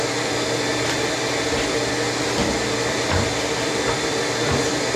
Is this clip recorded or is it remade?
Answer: recorded